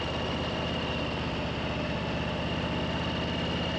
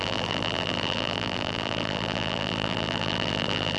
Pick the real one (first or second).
first